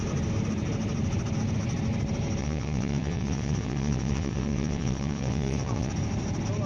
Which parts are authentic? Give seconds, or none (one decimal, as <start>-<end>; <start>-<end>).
0.0-2.4; 5.9-6.7